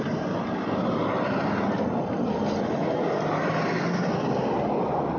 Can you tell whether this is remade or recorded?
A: recorded